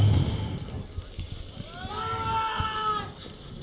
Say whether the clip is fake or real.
real